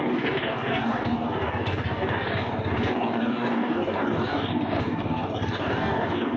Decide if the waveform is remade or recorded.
remade